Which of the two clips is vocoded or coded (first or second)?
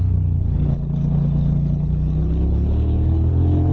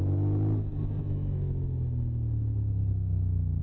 first